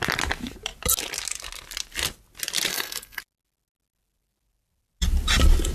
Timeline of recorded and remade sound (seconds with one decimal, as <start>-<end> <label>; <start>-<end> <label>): 0.0-2.7 recorded; 2.7-3.2 remade; 3.2-5.7 recorded